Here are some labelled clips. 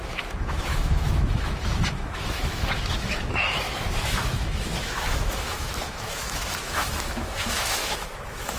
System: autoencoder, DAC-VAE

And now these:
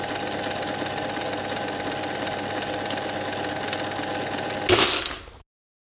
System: none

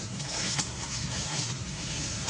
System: codec, SNAC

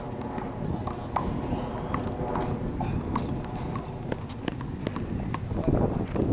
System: none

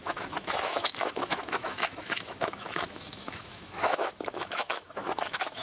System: autoencoder, DAC-VAE